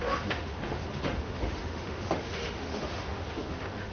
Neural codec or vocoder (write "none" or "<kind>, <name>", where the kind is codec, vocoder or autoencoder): autoencoder, DAC-VAE